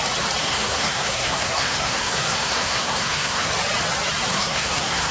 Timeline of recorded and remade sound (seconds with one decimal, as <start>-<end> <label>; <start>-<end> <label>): 0.0-0.4 recorded; 0.4-3.5 remade; 3.5-4.3 recorded; 4.3-5.1 remade